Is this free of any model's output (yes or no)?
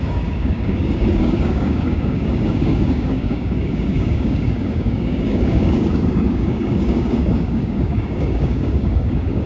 no